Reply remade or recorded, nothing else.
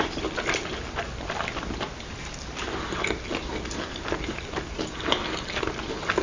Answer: recorded